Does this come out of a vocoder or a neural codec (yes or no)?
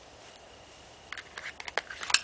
no